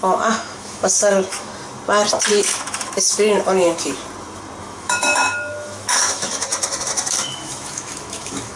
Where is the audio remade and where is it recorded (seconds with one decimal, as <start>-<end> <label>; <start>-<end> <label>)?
0.0-1.5 remade; 1.5-2.3 recorded; 2.3-4.0 remade; 4.0-4.6 recorded; 4.6-8.6 remade